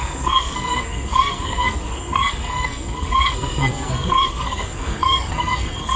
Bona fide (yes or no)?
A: no